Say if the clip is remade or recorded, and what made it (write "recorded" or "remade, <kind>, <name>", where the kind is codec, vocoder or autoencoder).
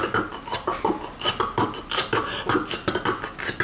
recorded